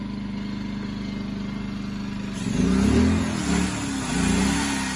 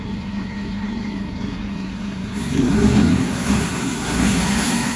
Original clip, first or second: first